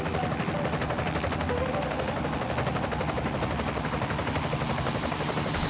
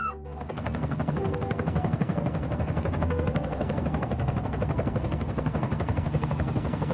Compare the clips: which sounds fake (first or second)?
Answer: second